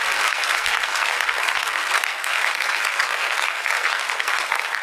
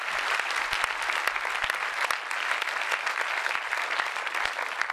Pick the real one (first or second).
second